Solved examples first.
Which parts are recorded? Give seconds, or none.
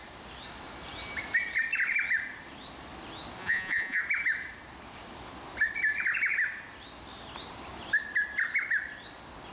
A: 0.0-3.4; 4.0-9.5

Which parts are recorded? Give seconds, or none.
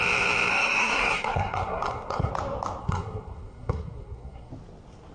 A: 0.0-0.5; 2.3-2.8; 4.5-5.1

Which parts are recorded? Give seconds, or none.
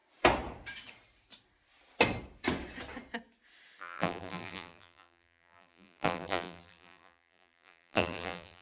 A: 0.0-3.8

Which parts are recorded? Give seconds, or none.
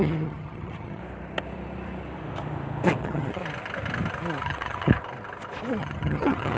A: 1.0-3.0; 3.4-4.4; 4.9-5.8